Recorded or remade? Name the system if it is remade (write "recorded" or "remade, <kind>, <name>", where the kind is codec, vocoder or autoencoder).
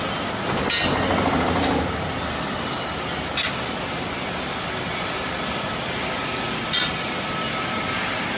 recorded